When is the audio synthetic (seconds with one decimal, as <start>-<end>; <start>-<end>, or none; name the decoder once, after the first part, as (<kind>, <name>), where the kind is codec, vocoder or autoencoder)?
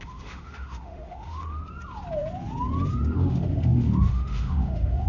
0.0-1.6 (autoencoder, DAC-VAE); 2.9-5.1